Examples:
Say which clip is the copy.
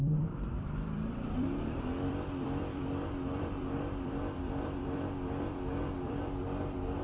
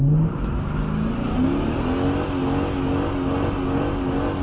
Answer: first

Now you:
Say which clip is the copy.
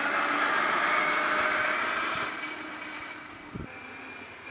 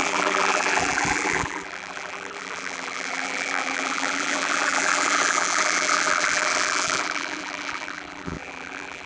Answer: second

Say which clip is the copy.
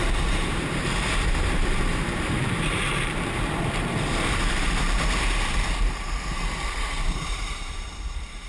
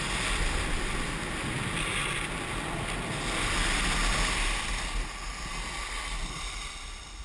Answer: first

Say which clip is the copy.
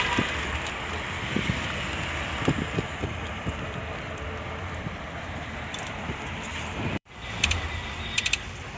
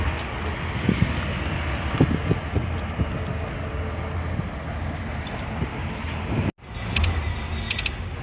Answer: first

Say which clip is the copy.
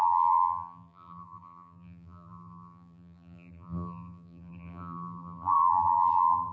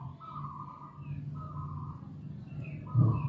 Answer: first